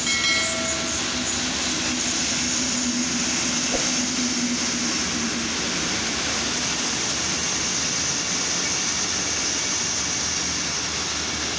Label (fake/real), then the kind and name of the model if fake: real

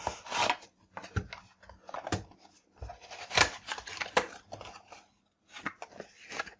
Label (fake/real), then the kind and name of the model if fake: real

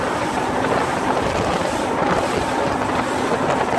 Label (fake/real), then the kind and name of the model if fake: real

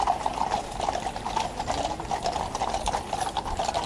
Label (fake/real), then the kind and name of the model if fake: real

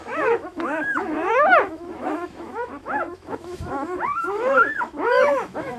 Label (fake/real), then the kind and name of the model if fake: fake, autoencoder, DAC-VAE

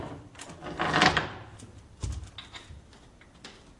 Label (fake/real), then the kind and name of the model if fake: real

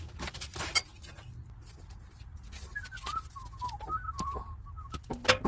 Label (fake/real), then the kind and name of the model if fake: real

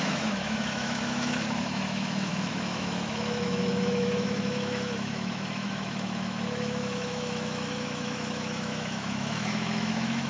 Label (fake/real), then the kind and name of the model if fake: fake, autoencoder, DAC-VAE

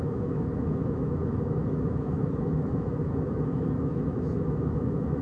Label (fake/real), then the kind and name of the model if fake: fake, autoencoder, DAC-VAE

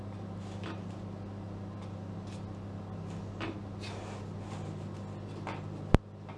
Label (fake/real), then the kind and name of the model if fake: real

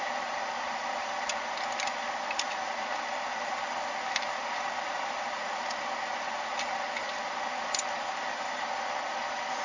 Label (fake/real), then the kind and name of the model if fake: real